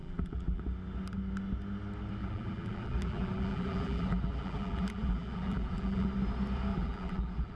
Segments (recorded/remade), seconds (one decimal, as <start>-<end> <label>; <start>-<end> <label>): 0.0-0.6 remade; 0.6-2.2 recorded; 2.2-6.1 remade; 6.1-6.7 recorded; 6.7-7.6 remade